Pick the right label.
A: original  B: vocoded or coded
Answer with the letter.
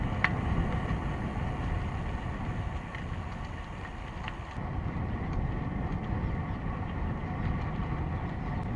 A